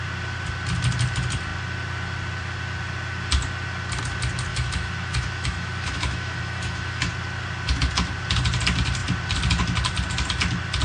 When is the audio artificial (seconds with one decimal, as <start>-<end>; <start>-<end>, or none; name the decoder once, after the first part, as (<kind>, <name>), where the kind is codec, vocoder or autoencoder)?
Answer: 4.5-7.1 (autoencoder, DAC-VAE)